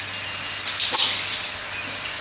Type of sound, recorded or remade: recorded